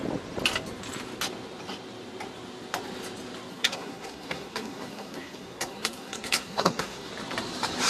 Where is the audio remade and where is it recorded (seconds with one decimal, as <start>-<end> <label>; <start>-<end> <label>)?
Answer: 0.0-3.5 recorded; 3.5-7.1 remade; 7.1-7.9 recorded